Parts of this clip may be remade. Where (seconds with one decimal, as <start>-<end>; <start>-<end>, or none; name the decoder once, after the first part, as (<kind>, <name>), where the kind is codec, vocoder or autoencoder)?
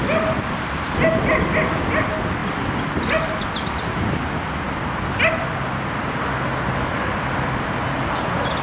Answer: none